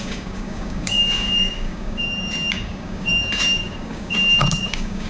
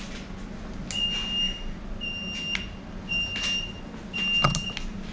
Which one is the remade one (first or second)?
first